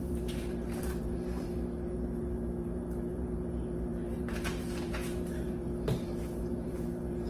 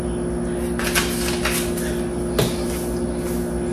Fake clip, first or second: first